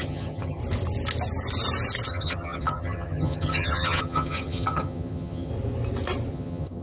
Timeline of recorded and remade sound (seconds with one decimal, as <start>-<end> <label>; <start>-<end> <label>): 0.0-0.6 remade; 0.6-2.1 recorded; 2.1-5.5 remade; 5.5-6.3 recorded; 6.3-6.8 remade